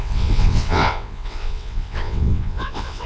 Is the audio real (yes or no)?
no